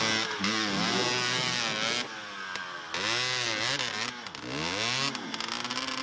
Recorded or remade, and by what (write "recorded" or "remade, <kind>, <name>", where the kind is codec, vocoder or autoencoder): recorded